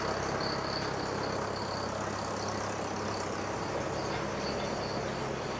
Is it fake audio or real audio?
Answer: real